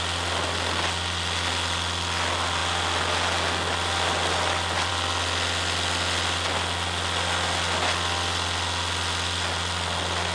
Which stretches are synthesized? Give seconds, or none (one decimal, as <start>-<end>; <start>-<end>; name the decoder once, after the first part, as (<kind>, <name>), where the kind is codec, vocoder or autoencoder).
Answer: none